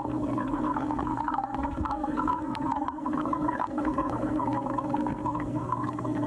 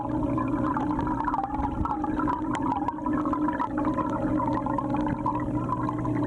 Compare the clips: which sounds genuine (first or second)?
second